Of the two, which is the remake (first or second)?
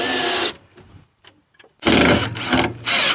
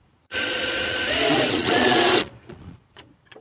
second